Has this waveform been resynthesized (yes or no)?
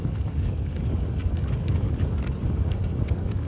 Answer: yes